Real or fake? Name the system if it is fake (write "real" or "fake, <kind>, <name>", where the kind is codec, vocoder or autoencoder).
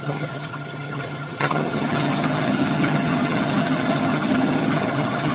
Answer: fake, vocoder, HiFi-GAN